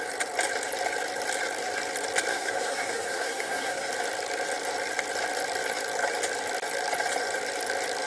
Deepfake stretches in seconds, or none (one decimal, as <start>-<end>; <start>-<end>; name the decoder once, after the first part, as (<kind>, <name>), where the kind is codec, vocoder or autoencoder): 2.3-3.9 (codec, SNAC)